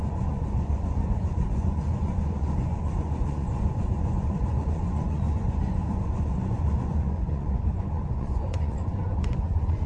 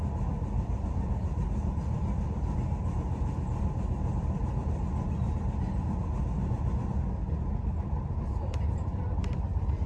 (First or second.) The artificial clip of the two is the first